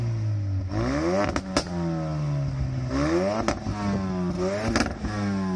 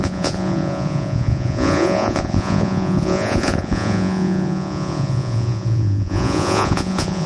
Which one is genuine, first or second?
first